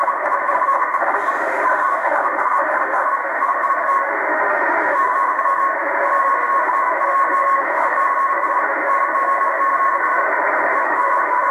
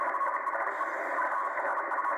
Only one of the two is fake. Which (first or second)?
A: first